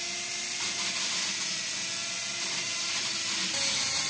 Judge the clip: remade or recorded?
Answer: recorded